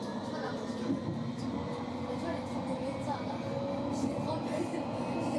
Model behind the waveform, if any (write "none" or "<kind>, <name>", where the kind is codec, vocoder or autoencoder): none